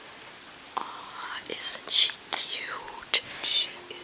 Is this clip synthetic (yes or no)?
no